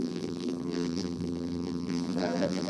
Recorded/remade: remade